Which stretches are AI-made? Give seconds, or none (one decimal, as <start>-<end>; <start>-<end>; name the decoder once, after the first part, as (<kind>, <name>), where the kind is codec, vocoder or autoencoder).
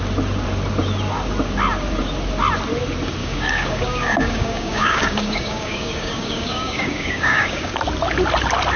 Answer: 3.2-7.8 (codec, DAC)